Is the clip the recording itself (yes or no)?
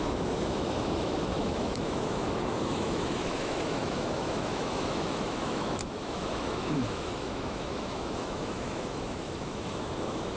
no